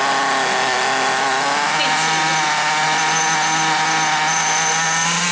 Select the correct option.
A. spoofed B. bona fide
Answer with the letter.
B